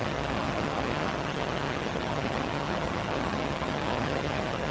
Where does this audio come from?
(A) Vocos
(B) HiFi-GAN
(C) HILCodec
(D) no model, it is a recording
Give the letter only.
B